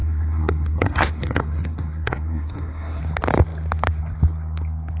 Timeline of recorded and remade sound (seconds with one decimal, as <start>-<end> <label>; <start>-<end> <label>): 0.0-3.0 remade; 3.0-5.0 recorded